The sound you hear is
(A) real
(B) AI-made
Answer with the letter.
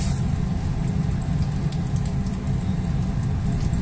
A